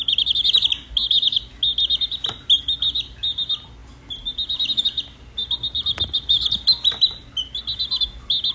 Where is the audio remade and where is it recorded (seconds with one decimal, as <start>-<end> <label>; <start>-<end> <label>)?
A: 0.0-8.5 recorded